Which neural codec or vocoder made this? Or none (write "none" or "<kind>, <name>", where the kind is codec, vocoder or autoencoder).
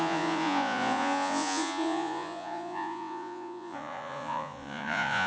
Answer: vocoder, Vocos